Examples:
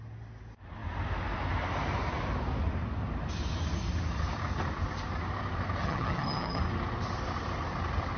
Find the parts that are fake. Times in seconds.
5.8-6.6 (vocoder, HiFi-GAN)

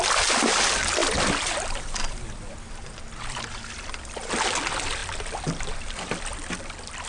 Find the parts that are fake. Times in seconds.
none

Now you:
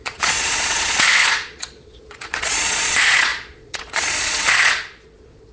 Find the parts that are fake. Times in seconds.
0.0-5.5 (vocoder, Vocos)